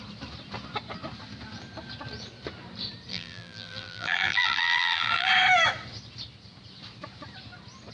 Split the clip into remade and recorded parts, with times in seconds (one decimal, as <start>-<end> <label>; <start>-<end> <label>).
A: 0.0-3.1 recorded; 3.1-5.3 remade; 5.3-7.9 recorded